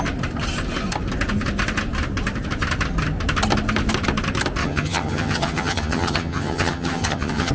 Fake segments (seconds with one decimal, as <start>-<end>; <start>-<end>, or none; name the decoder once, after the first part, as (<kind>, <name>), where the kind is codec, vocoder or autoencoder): 4.6-7.5 (vocoder, HiFi-GAN)